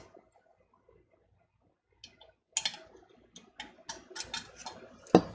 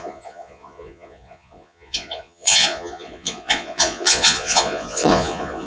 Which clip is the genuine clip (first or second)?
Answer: first